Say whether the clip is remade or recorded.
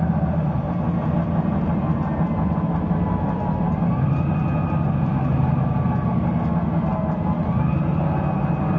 recorded